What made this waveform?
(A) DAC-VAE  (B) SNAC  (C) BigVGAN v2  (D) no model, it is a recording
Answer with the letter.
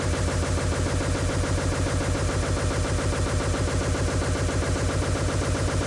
D